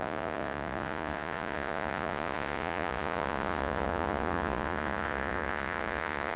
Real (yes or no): no